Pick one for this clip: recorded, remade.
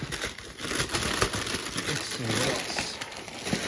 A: recorded